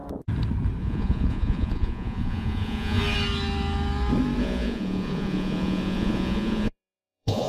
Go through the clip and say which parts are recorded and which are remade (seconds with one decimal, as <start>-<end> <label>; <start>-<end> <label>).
0.0-0.8 recorded; 0.8-3.0 remade; 3.0-4.4 recorded; 4.4-7.5 remade